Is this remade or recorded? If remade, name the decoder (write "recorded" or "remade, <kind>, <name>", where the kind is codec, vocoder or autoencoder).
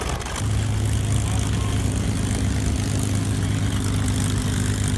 recorded